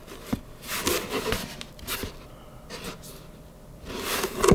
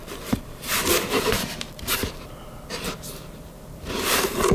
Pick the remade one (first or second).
second